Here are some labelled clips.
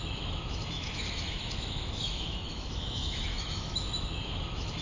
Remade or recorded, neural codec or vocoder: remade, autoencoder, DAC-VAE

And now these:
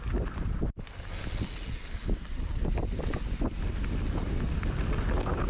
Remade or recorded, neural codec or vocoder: recorded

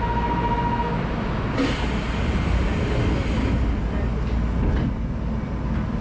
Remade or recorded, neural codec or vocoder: recorded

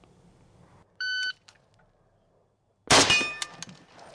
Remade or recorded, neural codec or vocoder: recorded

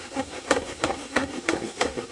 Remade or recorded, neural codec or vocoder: remade, codec, SNAC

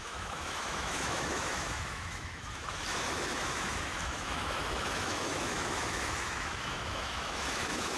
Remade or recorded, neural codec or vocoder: remade, autoencoder, DAC-VAE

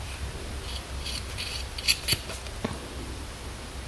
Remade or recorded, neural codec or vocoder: recorded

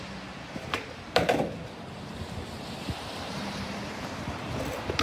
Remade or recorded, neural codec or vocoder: remade, vocoder, BigVGAN v2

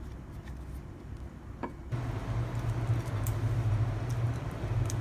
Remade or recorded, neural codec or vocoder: recorded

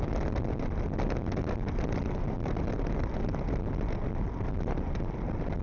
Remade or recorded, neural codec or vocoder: recorded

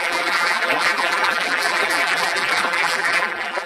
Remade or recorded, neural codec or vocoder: remade, vocoder, BigVGAN v2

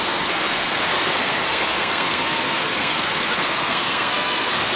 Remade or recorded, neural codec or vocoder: remade, codec, SNAC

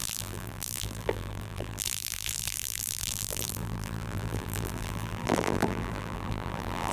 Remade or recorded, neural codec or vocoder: remade, vocoder, BigVGAN v2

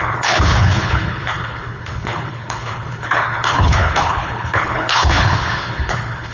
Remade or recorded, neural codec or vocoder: remade, codec, HILCodec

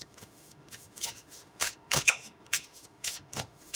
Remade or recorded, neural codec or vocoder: remade, autoencoder, DAC-VAE